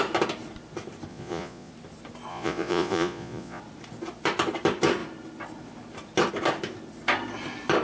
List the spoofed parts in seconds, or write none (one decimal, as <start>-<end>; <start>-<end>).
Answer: 1.1-1.7; 2.3-3.6